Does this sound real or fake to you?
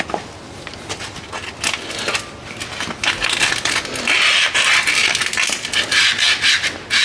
real